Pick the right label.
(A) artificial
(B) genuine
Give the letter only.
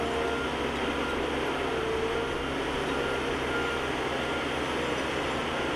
B